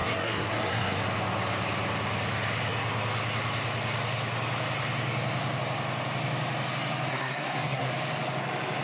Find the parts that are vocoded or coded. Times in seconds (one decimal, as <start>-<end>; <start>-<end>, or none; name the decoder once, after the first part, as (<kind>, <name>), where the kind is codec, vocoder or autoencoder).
0.0-1.0 (codec, SNAC); 7.1-7.9